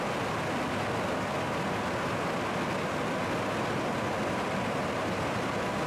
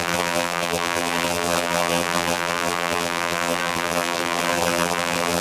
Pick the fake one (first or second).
second